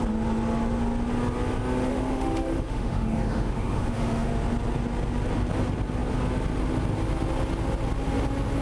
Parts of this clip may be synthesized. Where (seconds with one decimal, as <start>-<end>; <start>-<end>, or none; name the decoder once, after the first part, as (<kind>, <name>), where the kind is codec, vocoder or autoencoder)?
1.9-4.3 (autoencoder, DAC-VAE)